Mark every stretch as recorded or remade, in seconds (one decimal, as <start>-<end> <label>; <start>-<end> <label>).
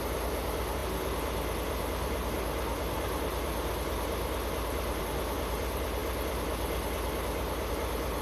0.0-8.2 recorded